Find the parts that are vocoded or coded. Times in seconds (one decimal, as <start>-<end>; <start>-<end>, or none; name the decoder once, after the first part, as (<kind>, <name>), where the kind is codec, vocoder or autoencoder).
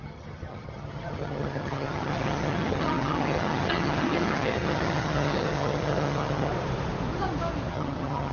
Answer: 0.0-6.5 (vocoder, HiFi-GAN); 7.7-8.3